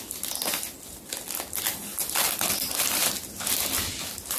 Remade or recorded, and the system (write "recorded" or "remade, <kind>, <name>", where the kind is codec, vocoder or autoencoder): recorded